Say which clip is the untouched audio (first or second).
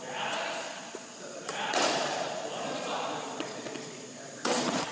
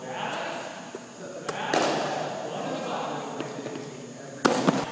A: second